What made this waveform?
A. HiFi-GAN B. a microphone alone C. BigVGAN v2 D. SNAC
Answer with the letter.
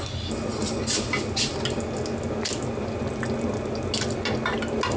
B